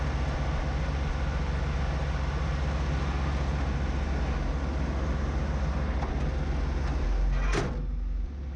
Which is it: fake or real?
real